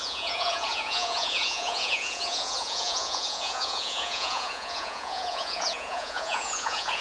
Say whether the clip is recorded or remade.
remade